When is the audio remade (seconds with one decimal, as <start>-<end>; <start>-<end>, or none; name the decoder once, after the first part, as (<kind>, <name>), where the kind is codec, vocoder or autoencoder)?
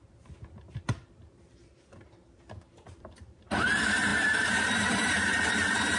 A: 0.0-5.3 (vocoder, BigVGAN v2)